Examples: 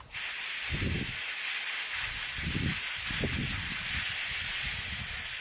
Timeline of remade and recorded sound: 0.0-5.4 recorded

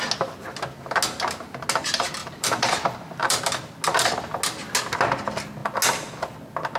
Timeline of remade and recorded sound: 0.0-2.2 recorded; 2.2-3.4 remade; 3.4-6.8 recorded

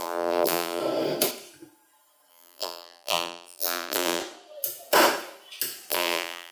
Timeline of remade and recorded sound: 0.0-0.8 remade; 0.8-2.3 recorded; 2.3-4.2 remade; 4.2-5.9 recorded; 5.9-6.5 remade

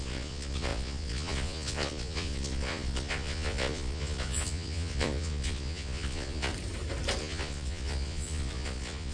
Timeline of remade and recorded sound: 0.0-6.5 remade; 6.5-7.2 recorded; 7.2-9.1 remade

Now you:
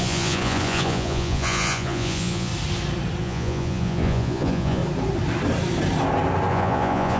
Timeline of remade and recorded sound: 0.0-2.5 remade; 2.5-3.2 recorded; 3.2-4.8 remade; 4.8-6.5 recorded; 6.5-7.2 remade

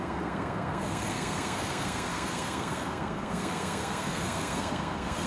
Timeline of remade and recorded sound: 0.0-5.3 remade

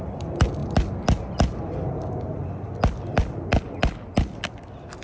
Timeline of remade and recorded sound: 0.0-5.0 recorded